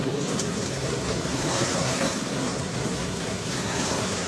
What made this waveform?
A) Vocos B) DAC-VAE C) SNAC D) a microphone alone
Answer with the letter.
C